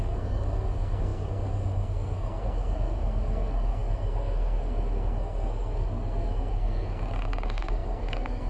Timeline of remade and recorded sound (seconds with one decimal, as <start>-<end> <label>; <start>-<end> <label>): 0.0-8.5 remade

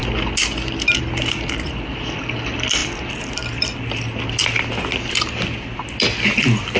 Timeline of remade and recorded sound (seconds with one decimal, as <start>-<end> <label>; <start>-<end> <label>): 0.0-6.8 recorded

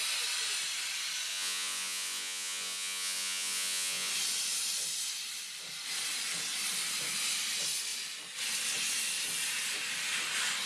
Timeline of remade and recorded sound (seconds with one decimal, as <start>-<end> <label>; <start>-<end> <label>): 0.0-1.3 recorded; 1.3-4.1 remade; 4.1-10.7 recorded

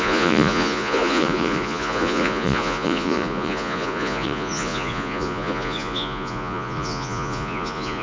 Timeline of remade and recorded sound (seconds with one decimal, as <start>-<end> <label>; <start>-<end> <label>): 0.0-8.0 remade

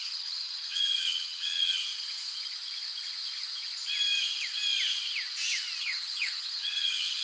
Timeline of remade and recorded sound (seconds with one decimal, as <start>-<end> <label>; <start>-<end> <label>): 0.0-1.8 remade; 1.8-5.8 recorded; 5.8-7.2 remade

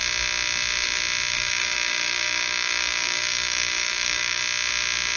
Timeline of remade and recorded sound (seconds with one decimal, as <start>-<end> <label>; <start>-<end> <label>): 0.0-1.3 recorded; 1.3-4.4 remade; 4.4-5.2 recorded

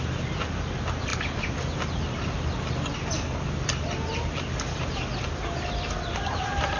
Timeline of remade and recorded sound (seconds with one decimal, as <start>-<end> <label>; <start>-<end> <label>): 0.0-6.8 recorded